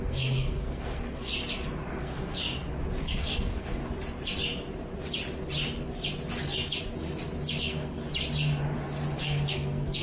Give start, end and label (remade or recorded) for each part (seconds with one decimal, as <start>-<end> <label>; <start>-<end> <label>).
0.0-1.3 remade; 1.3-1.9 recorded; 1.9-2.4 remade; 2.4-3.0 recorded; 3.0-3.8 remade; 3.8-7.6 recorded; 7.6-8.0 remade; 8.0-9.2 recorded; 9.2-10.0 remade